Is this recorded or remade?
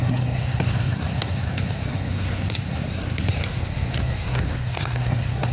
remade